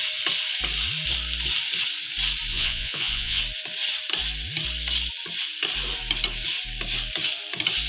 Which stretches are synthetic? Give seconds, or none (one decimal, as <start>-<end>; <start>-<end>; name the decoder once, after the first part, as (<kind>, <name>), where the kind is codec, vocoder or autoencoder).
2.5-3.4 (vocoder, Vocos)